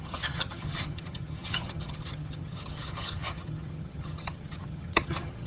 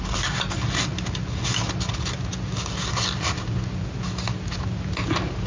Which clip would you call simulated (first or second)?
first